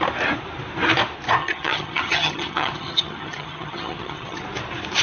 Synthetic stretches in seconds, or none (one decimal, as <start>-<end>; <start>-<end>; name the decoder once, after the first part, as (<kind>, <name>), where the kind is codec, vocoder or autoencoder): 1.4-4.4 (vocoder, HiFi-GAN)